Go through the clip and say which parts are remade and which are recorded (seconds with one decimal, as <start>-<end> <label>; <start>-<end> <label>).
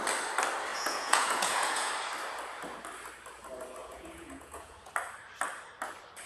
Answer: 0.0-0.7 recorded; 0.7-1.9 remade; 1.9-3.8 recorded; 3.8-4.9 remade; 4.9-6.3 recorded